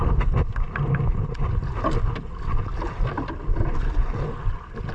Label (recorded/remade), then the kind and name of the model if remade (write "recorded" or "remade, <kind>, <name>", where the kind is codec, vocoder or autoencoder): recorded